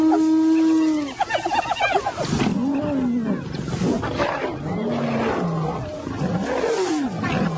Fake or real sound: real